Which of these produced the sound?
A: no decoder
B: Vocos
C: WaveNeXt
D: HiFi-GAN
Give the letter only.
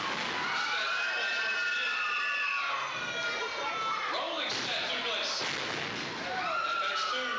A